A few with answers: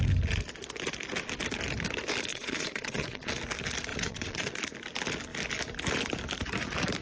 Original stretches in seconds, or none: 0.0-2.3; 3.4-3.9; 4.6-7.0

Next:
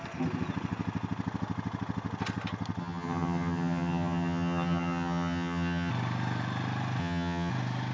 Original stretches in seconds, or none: 0.0-2.8; 5.9-7.0; 7.5-7.9

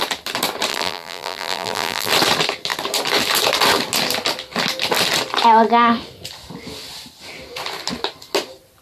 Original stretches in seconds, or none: 0.0-0.7; 2.1-8.8

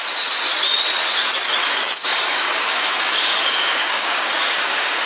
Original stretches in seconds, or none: 0.0-1.6

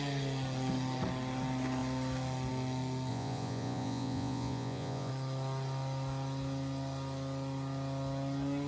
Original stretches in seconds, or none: 0.0-3.1; 5.1-8.7

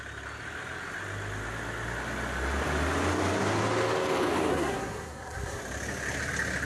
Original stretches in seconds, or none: 0.0-4.5; 5.6-6.6